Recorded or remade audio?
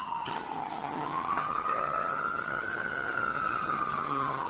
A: remade